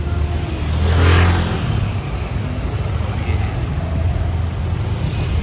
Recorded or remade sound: recorded